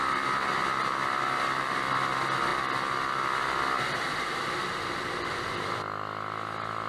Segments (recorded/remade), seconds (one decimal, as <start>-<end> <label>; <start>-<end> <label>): 0.0-6.9 recorded